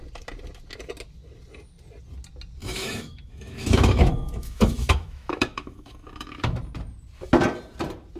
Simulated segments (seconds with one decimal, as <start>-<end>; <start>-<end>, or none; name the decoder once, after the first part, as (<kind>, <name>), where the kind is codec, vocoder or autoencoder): 2.6-6.6 (autoencoder, DAC-VAE)